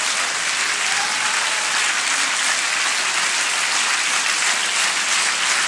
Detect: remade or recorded recorded